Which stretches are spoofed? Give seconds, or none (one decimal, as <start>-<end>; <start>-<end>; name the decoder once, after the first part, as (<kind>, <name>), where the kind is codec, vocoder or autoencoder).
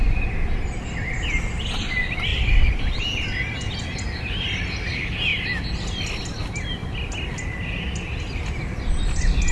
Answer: none